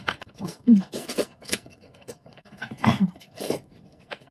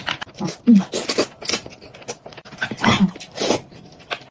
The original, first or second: second